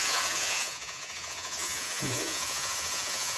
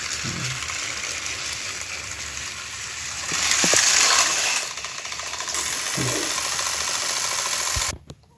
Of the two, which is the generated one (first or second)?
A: first